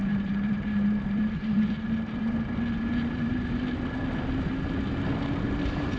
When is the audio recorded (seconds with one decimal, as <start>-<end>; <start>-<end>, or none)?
3.5-6.0